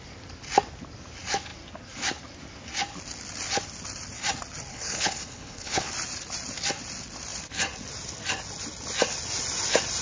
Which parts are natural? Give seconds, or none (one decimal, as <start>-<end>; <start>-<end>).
0.0-4.7; 5.9-10.0